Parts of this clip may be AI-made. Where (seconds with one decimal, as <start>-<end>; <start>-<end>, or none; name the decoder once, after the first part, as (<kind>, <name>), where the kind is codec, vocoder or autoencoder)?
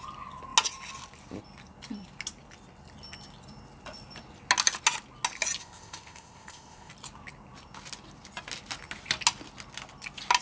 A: 5.6-6.9 (codec, ZipCodec)